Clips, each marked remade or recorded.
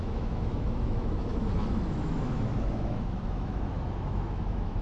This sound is remade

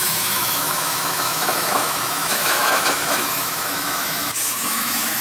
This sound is remade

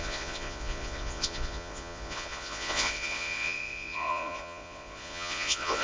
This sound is remade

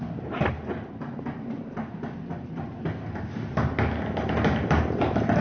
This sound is recorded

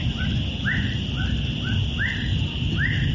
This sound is recorded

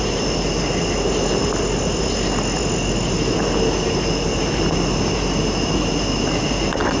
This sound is recorded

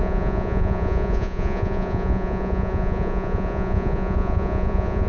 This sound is remade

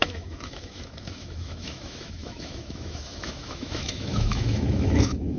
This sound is remade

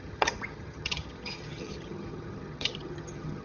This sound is remade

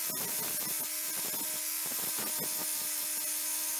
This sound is recorded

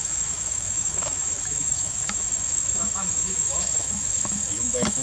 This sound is remade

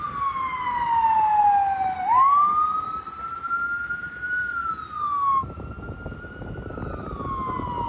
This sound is recorded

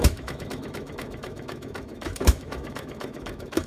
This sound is remade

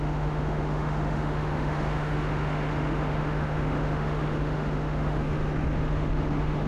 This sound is remade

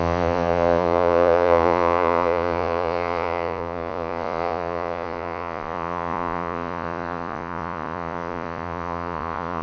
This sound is remade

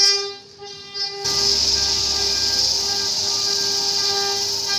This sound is recorded